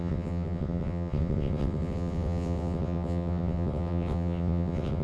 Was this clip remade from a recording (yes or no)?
yes